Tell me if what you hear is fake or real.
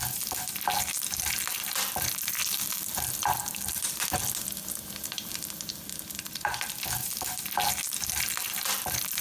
real